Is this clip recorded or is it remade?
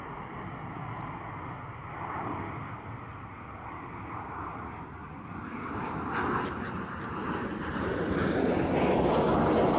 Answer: recorded